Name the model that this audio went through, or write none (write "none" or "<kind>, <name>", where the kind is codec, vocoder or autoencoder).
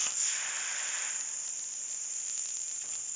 none